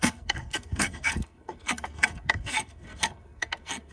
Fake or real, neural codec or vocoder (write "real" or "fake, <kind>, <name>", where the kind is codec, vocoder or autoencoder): fake, codec, SNAC